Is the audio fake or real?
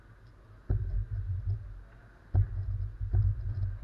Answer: real